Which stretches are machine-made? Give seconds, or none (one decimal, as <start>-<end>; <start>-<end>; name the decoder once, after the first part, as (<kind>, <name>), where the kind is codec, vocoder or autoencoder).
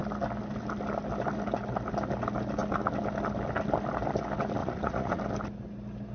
4.6-5.2 (vocoder, Vocos)